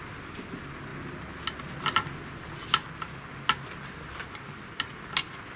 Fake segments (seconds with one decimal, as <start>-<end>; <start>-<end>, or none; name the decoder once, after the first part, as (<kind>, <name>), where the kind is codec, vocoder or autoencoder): none